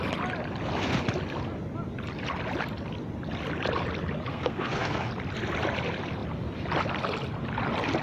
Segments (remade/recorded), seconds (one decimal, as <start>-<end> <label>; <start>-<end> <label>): 0.0-4.3 recorded; 4.3-5.1 remade; 5.1-8.0 recorded